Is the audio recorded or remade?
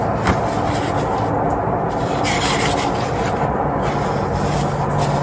recorded